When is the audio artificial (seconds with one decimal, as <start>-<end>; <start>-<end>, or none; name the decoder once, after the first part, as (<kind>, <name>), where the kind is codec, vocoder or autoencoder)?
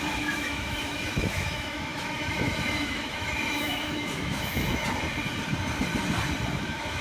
0.0-4.7 (autoencoder, DAC-VAE); 6.5-7.0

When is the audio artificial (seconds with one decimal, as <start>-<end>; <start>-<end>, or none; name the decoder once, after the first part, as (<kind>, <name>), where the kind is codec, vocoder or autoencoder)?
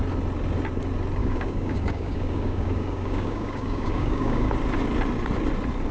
1.2-4.5 (codec, DAC)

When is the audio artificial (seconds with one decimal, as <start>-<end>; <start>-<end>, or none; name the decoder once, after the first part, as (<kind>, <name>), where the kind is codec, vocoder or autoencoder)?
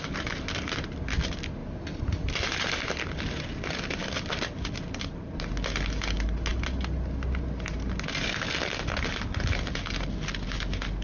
none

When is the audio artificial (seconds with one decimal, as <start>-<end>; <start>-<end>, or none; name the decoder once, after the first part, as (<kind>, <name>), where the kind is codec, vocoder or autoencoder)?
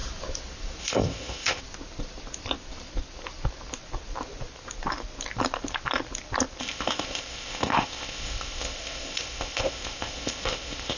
0.8-1.6 (codec, ZipCodec); 6.6-11.0